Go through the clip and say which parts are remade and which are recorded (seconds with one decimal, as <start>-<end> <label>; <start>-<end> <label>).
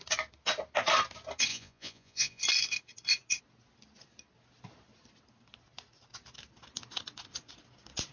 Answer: 0.0-1.5 recorded; 1.5-2.4 remade; 2.4-8.1 recorded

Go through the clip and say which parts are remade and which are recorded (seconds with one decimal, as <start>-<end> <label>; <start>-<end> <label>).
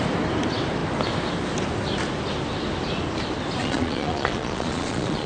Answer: 0.0-3.6 recorded; 3.6-5.3 remade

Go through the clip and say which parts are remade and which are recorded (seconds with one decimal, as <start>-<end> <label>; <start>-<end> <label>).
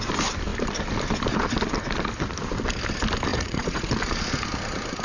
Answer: 0.0-3.3 recorded; 3.3-3.9 remade; 3.9-5.0 recorded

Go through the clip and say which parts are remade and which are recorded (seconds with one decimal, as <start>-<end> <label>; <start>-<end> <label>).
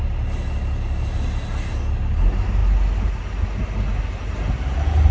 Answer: 0.0-5.1 recorded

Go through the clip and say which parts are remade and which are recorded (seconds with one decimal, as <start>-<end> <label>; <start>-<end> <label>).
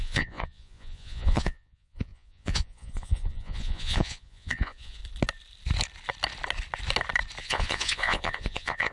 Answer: 0.0-5.0 remade; 5.0-7.4 recorded; 7.4-8.9 remade